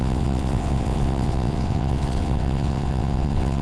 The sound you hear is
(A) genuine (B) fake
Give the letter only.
B